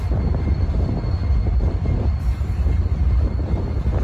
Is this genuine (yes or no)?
yes